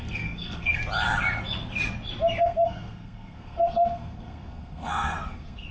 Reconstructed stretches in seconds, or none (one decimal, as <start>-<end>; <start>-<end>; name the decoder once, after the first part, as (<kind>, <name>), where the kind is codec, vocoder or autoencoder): 0.0-0.8 (codec, SNAC); 2.4-5.7